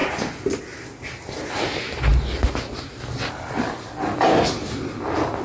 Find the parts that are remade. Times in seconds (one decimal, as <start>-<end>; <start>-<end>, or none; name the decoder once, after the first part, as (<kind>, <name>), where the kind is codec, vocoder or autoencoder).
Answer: none